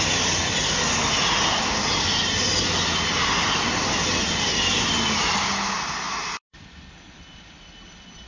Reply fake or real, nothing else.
real